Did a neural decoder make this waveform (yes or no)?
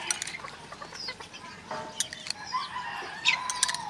no